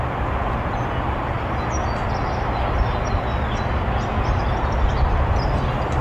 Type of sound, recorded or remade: recorded